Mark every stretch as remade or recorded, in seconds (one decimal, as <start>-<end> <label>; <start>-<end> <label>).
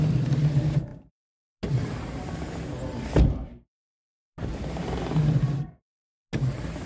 0.0-6.9 recorded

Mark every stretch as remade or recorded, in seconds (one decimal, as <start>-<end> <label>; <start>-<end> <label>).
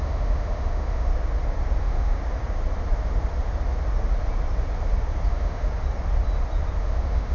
0.0-1.1 remade; 1.1-1.8 recorded; 1.8-2.2 remade; 2.2-5.3 recorded; 5.3-5.7 remade; 5.7-6.8 recorded; 6.8-7.3 remade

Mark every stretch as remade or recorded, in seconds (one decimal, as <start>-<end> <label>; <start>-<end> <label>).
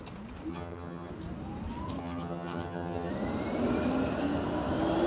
0.0-0.5 recorded; 0.5-1.1 remade; 1.1-2.0 recorded; 2.0-3.1 remade; 3.1-5.1 recorded